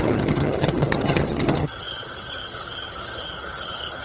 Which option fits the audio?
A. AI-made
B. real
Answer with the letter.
A